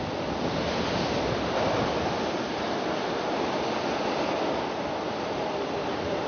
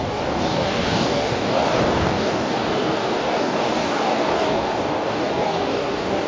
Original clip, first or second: first